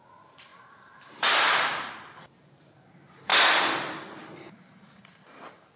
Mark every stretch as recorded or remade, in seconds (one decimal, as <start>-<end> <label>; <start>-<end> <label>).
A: 0.0-3.3 remade; 3.3-4.1 recorded; 4.1-5.8 remade